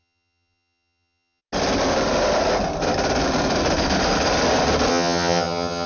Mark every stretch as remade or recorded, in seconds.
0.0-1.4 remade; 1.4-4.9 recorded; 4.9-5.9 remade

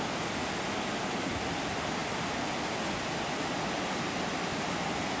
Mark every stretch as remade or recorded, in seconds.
0.0-5.2 recorded

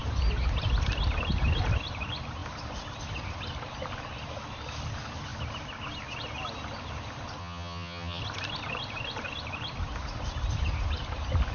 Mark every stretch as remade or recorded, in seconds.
0.0-7.4 recorded; 7.4-8.2 remade; 8.2-11.5 recorded

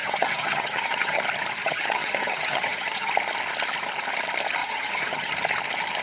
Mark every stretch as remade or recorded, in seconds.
0.0-1.2 remade; 1.2-1.6 recorded; 1.6-3.1 remade; 3.1-4.6 recorded; 4.6-5.3 remade; 5.3-6.0 recorded